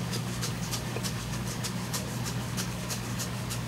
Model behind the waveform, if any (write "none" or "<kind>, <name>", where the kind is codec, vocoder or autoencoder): codec, DAC